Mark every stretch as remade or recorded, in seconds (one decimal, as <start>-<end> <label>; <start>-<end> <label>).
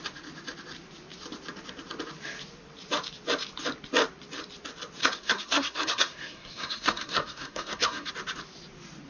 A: 0.0-5.0 recorded; 5.0-8.1 remade; 8.1-9.1 recorded